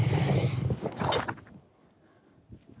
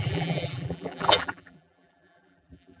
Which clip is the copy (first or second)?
second